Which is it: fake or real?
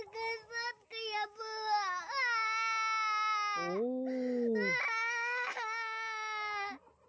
real